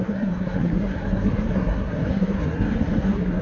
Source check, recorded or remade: remade